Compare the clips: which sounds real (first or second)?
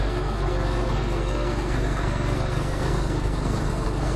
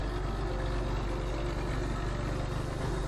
second